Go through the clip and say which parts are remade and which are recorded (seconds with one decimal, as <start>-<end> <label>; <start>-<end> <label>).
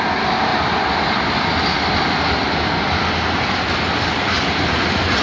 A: 0.0-5.2 recorded